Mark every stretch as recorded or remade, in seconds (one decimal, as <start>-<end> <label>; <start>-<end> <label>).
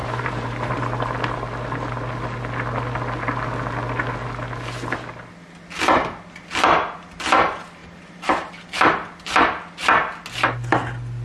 0.0-0.7 remade; 0.7-7.8 recorded; 7.8-8.5 remade; 8.5-11.2 recorded